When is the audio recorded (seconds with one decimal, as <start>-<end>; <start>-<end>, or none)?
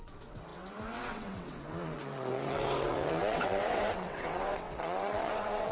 none